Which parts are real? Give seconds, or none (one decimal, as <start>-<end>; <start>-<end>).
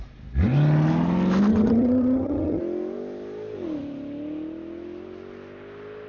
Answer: 0.0-1.5; 2.6-6.1